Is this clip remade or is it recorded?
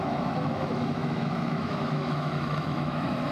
remade